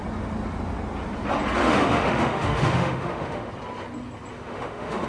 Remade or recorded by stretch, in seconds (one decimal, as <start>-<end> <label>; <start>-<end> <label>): 0.0-1.6 recorded; 1.6-3.5 remade; 3.5-4.3 recorded; 4.3-5.1 remade